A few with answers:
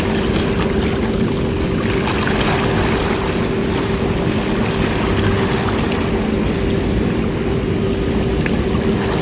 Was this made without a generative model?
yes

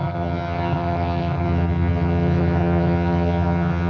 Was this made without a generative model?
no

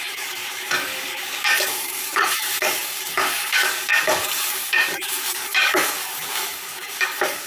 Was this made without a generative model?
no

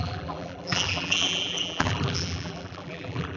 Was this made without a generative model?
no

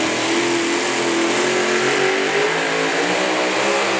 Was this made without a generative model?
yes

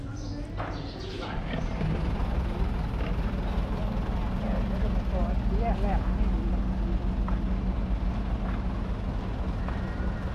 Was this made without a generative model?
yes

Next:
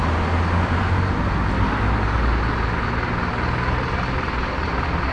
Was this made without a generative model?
yes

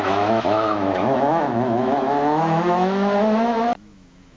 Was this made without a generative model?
no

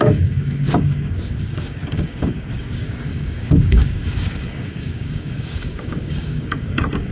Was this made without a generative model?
no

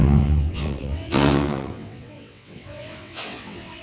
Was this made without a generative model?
no